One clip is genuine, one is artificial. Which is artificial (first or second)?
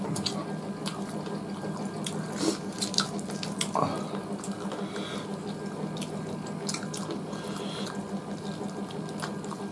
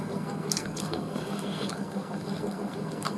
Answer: second